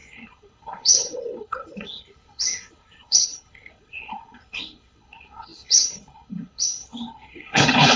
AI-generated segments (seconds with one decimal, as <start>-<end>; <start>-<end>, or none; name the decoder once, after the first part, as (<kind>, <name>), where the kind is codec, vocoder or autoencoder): 0.0-8.0 (codec, HILCodec)